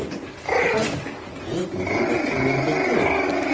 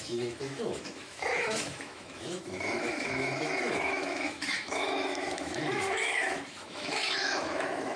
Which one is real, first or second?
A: first